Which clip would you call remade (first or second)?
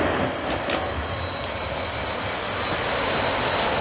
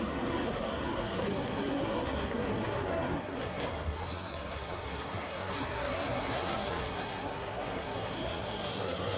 second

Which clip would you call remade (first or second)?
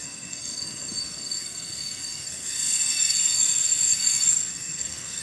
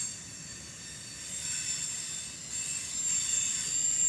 first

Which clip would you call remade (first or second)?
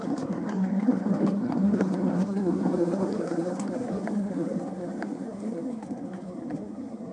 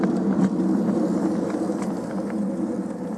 first